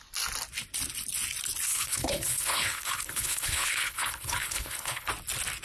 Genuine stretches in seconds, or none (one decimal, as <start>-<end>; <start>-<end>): 0.0-1.7; 5.1-5.6

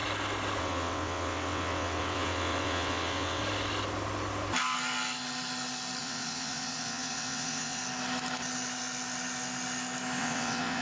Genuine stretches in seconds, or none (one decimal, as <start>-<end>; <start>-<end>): 0.0-0.6; 3.4-6.0; 7.8-10.2

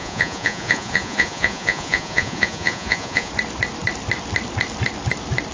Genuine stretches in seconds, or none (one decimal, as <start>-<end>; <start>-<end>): 3.3-5.5

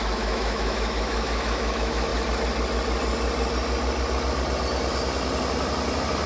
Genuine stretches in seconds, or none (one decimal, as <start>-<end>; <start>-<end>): 2.1-6.3

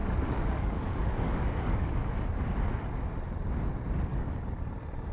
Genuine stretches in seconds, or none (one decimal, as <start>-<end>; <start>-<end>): 2.1-4.1; 4.6-5.1

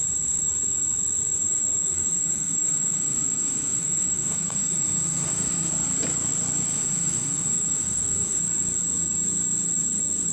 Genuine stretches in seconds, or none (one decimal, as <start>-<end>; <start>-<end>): 0.0-1.4; 5.7-6.7; 8.4-10.3

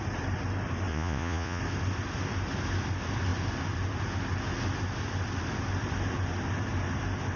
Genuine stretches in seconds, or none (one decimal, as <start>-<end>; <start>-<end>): 0.0-0.9; 1.6-7.4